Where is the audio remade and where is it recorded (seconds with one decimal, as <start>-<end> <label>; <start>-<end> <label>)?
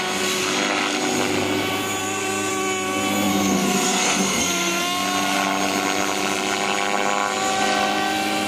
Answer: 0.0-2.0 recorded; 2.0-2.5 remade; 2.5-3.3 recorded; 3.3-4.8 remade; 4.8-8.5 recorded